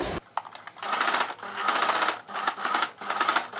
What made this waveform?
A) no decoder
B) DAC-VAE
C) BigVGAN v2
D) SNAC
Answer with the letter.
A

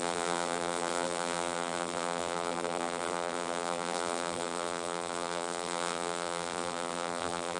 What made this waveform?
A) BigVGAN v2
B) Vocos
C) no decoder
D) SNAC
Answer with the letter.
A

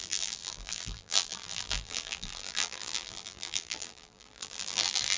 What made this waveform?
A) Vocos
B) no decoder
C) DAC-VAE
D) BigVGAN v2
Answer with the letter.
D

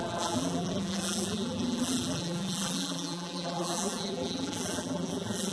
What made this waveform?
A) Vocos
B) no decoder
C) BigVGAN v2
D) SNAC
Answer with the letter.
C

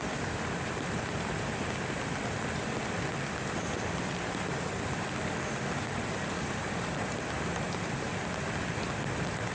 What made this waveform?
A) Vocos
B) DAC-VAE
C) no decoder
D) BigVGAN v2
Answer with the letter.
C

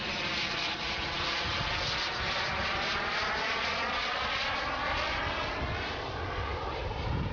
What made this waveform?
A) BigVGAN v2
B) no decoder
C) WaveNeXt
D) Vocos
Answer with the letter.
B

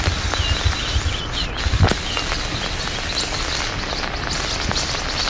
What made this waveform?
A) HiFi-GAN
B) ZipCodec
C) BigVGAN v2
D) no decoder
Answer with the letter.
D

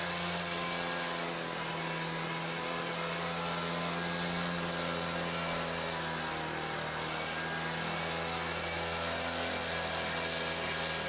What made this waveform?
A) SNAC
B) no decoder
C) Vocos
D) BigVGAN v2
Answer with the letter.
B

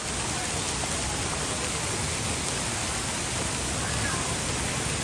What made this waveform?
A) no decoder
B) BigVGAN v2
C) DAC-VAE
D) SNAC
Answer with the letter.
A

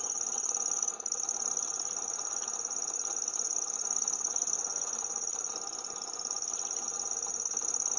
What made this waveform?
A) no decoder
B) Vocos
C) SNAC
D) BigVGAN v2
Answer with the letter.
A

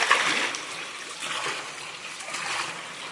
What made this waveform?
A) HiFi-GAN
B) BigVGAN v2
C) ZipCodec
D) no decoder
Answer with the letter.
D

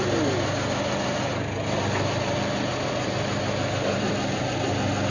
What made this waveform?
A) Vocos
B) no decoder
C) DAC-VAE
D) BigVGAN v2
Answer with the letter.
B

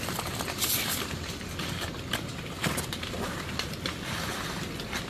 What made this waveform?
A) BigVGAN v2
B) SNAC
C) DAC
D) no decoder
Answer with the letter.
D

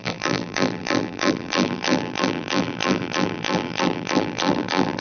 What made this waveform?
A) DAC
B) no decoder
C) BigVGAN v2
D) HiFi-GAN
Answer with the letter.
C